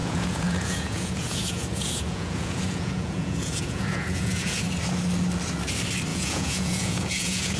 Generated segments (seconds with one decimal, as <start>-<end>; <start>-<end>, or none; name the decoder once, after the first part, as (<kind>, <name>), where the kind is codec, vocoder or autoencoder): 0.0-4.6 (vocoder, Vocos); 6.1-7.6